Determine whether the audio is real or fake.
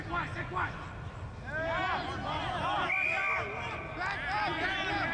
real